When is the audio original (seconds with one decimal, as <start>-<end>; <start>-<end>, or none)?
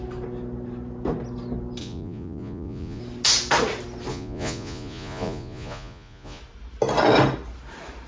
0.0-1.8; 3.0-4.1; 6.4-8.1